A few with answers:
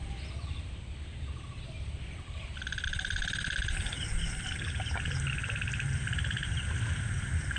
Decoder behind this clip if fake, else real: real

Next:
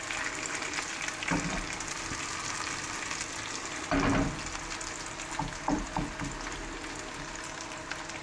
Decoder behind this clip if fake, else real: real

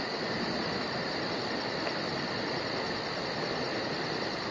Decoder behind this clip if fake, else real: real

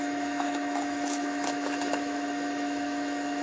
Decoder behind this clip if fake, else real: fake, autoencoder, DAC-VAE